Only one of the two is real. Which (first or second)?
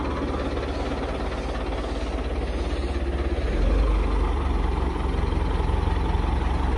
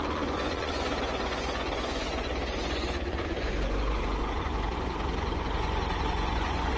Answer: first